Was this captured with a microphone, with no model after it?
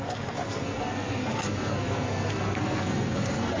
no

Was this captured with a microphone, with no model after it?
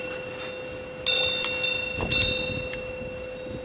yes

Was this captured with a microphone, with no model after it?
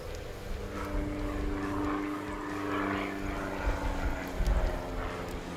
yes